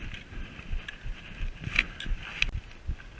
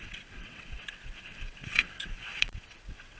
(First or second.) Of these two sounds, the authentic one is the first